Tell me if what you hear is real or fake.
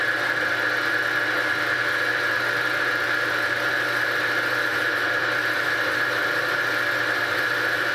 real